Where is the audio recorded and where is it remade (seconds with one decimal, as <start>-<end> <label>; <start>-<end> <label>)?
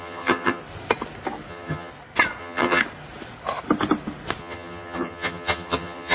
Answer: 0.0-0.6 remade; 0.6-1.5 recorded; 1.5-1.9 remade; 1.9-2.4 recorded; 2.4-2.8 remade; 2.8-4.4 recorded; 4.4-6.1 remade